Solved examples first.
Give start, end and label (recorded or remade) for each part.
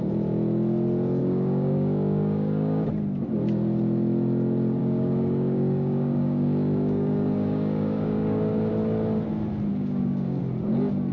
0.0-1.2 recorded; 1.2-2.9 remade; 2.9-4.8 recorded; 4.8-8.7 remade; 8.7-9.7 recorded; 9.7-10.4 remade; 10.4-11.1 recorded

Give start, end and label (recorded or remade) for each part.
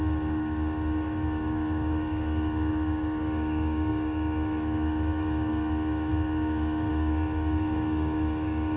0.0-8.8 remade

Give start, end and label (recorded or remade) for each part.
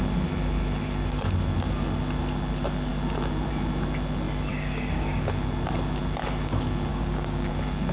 0.0-4.5 recorded; 4.5-5.3 remade; 5.3-6.9 recorded; 6.9-7.5 remade; 7.5-7.9 recorded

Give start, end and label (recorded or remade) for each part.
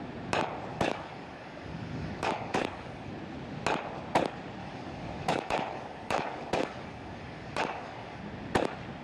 0.0-0.7 recorded; 0.7-3.1 remade; 3.1-4.6 recorded; 4.6-8.2 remade; 8.2-9.0 recorded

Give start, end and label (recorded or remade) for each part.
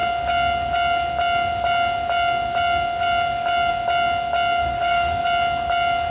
0.0-4.6 recorded; 4.6-5.2 remade; 5.2-6.1 recorded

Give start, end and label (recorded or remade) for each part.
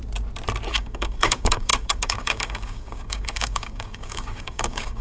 0.0-0.7 recorded; 0.7-5.0 remade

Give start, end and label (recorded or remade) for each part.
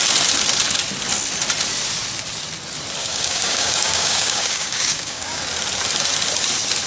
0.0-3.0 recorded; 3.0-5.4 remade; 5.4-6.9 recorded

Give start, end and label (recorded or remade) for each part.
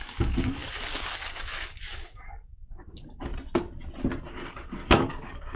0.0-3.3 remade; 3.3-4.3 recorded; 4.3-5.6 remade